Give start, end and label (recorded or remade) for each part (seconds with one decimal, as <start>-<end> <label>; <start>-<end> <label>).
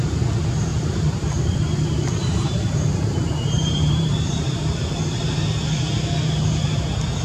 0.0-0.7 recorded; 0.7-5.0 remade; 5.0-7.2 recorded